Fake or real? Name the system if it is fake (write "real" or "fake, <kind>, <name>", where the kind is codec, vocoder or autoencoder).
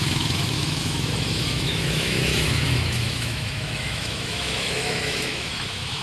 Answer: fake, autoencoder, DAC-VAE